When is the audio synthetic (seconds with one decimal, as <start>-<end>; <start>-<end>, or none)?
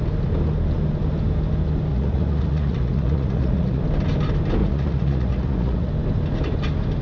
1.9-3.8; 4.6-5.9